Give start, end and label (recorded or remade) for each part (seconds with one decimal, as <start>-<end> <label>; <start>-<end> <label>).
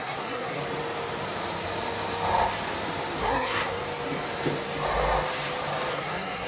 0.0-0.6 remade; 0.6-3.2 recorded; 3.2-3.8 remade; 3.8-5.9 recorded; 5.9-6.5 remade